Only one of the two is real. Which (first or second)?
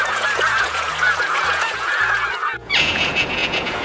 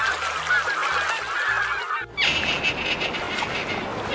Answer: second